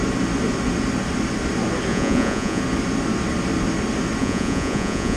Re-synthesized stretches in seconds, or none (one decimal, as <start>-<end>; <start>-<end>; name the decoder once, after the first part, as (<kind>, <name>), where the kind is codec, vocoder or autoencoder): 1.9-2.6 (vocoder, Vocos); 4.2-5.2